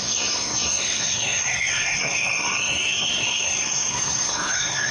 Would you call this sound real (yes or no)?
no